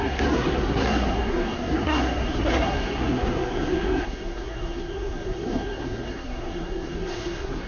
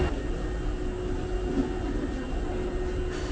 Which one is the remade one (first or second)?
first